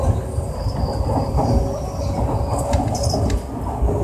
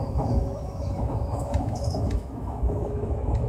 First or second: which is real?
first